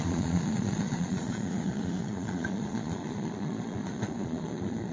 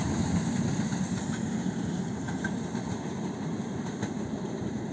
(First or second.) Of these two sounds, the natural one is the second